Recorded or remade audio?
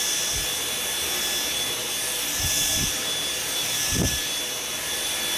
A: remade